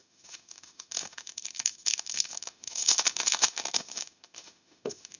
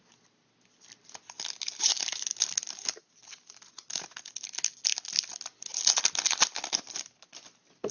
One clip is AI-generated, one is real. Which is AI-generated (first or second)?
first